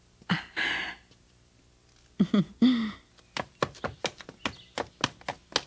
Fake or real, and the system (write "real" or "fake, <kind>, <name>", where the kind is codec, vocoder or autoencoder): real